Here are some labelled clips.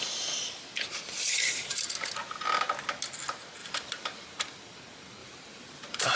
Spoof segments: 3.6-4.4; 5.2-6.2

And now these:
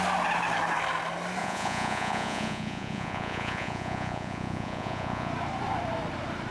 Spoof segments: 1.4-5.3

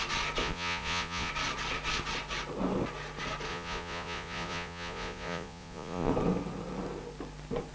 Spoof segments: 0.4-1.3; 3.5-6.1

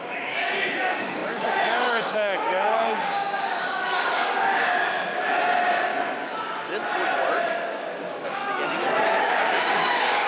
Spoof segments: 0.0-5.9; 7.4-8.4; 9.2-10.3